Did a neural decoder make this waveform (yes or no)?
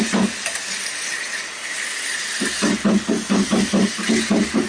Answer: no